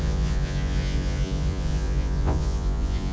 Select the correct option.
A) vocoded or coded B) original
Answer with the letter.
A